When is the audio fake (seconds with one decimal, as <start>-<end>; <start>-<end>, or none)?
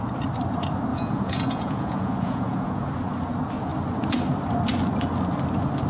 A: 0.9-2.9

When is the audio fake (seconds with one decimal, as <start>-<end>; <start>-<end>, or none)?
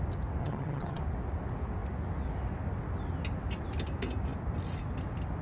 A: 0.4-1.0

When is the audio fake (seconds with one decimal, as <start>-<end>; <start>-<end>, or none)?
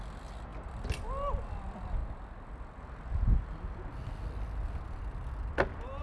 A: none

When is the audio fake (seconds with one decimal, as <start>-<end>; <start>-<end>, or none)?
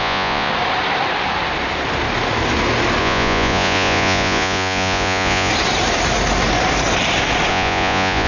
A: 0.0-0.5; 3.0-5.5; 7.5-8.3